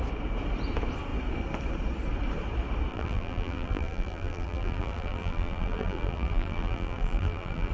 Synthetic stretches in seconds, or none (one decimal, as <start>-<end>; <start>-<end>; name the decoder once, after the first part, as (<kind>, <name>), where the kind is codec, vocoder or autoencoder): 2.9-7.7 (vocoder, BigVGAN v2)